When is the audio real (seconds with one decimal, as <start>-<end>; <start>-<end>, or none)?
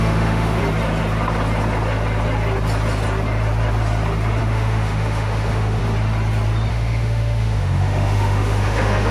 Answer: 0.6-4.4; 5.8-6.7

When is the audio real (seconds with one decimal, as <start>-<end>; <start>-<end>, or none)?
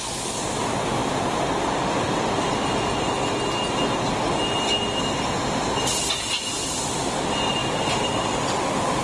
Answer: 0.0-7.6; 8.1-9.0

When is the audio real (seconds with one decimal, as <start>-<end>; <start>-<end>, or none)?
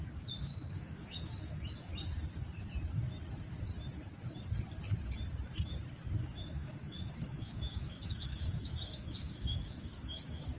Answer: 0.0-0.5; 1.9-6.2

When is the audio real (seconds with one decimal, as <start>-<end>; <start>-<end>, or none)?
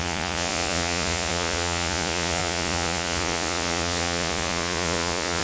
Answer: none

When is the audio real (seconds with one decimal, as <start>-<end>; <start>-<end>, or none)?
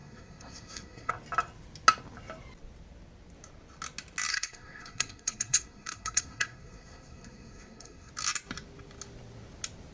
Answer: 1.1-4.3; 8.1-9.9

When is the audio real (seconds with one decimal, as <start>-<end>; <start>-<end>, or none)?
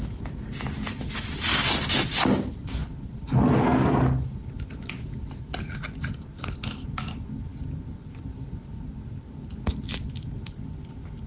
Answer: 0.0-11.3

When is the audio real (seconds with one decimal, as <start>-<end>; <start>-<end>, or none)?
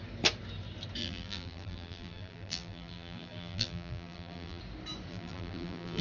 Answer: 0.0-1.0; 4.6-5.1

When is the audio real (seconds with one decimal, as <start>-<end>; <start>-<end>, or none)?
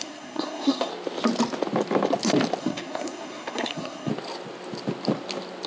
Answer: 0.9-2.6; 4.1-5.7